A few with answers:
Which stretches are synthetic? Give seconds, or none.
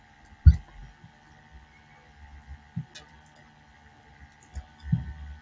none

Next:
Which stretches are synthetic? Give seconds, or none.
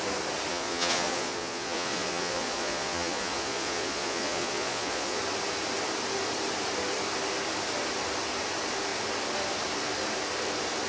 0.5-5.2 (vocoder, Vocos)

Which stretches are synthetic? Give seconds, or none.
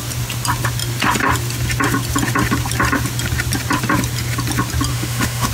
4.9-5.5 (autoencoder, DAC-VAE)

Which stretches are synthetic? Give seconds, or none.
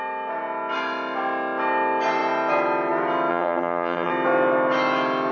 3.3-4.1 (vocoder, HiFi-GAN)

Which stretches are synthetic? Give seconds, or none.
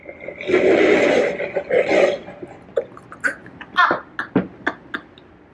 none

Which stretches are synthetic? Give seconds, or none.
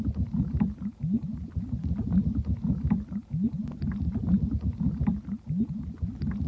none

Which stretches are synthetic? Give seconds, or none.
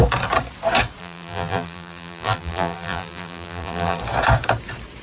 1.0-4.0 (vocoder, BigVGAN v2)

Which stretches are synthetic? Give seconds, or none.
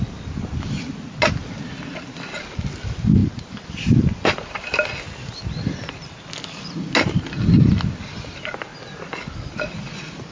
none